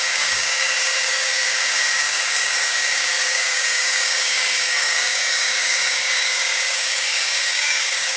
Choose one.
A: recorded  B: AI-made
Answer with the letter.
B